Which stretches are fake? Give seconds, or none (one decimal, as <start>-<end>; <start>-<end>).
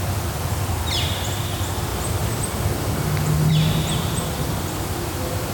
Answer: none